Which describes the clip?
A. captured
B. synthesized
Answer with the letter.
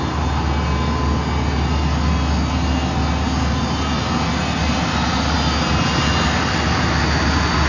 A